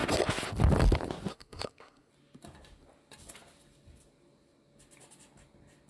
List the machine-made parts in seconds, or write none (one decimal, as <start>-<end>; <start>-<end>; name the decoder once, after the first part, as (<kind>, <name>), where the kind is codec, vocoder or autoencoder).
1.3-2.1 (codec, SNAC)